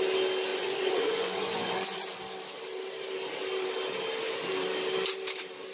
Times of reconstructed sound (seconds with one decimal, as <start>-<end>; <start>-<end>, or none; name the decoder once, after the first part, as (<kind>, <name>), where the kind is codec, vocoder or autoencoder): 0.5-2.2 (vocoder, Vocos)